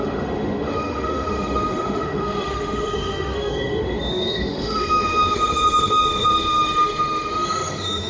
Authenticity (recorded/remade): remade